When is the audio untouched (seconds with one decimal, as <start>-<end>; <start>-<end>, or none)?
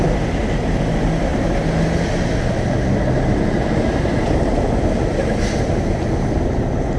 0.0-7.0